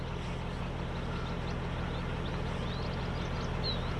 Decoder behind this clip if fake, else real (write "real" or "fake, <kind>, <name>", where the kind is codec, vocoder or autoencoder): real